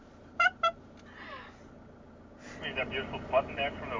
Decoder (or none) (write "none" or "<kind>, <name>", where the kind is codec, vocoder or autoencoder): none